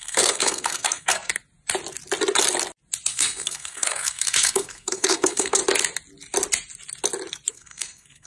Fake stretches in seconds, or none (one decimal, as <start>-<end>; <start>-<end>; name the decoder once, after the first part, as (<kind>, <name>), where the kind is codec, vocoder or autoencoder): 0.0-1.3 (codec, SNAC); 3.1-5.6; 7.5-8.3